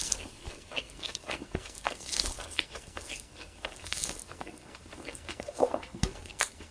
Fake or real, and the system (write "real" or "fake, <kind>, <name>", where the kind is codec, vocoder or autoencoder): fake, codec, SNAC